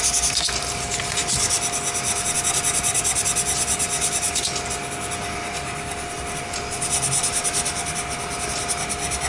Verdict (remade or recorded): recorded